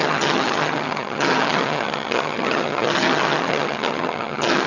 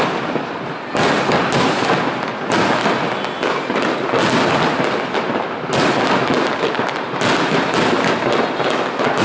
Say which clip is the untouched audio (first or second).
second